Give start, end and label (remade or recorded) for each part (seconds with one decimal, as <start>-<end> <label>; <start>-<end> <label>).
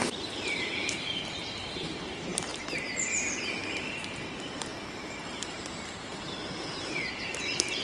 0.0-4.7 remade; 4.7-5.5 recorded; 5.5-7.8 remade